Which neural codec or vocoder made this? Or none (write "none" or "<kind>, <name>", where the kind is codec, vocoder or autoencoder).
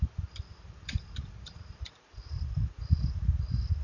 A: none